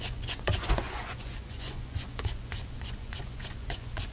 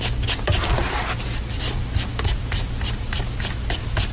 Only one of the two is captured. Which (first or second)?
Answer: second